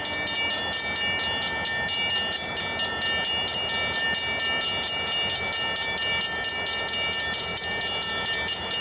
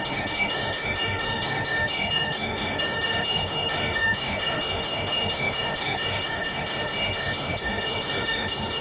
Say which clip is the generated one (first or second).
second